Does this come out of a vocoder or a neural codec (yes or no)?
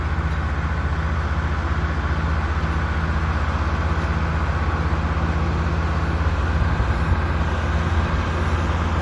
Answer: no